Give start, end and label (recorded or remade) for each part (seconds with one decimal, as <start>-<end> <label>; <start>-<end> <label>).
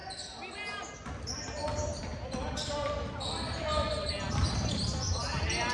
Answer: 0.0-5.7 recorded